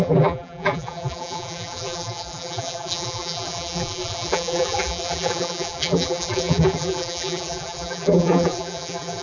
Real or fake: fake